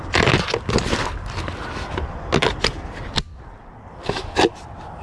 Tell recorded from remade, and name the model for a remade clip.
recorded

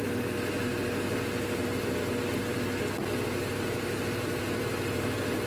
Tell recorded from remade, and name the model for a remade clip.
recorded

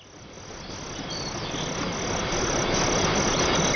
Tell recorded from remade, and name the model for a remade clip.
recorded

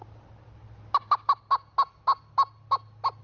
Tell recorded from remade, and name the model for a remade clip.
recorded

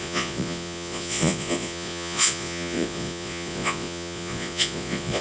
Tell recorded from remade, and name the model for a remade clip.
remade, vocoder, Vocos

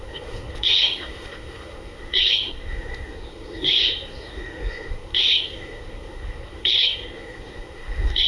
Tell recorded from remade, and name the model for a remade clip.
remade, codec, SNAC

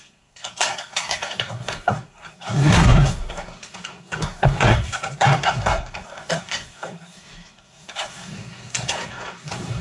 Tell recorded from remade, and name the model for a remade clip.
remade, codec, SNAC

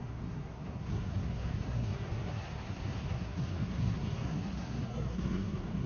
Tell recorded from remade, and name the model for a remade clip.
remade, codec, SNAC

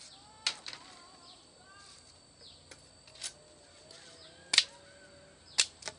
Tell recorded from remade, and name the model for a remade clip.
recorded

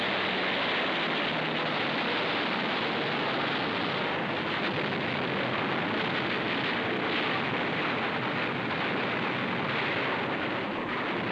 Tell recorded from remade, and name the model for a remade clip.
recorded